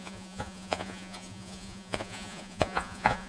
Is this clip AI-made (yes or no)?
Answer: yes